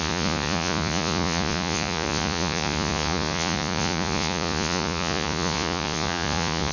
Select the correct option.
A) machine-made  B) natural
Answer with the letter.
A